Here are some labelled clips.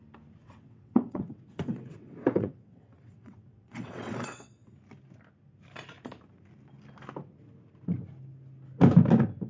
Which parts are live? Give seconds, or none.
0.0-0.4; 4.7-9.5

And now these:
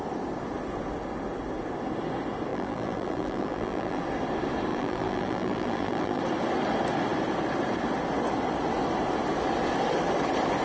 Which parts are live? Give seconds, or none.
0.0-2.5; 4.0-4.7; 6.2-10.6

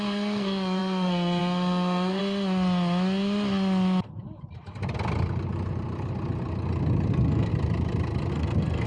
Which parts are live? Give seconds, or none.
2.2-7.1; 7.5-8.3

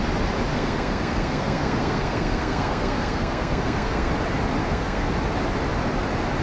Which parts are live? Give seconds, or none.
0.0-0.5; 4.1-4.6; 5.1-6.4

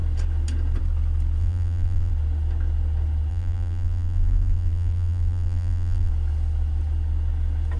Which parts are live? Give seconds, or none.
0.0-1.4; 2.1-3.3; 6.1-7.8